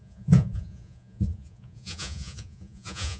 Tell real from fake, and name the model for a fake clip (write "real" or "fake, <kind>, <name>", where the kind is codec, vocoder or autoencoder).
fake, vocoder, Vocos